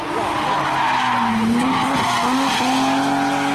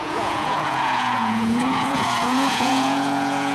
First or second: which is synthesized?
second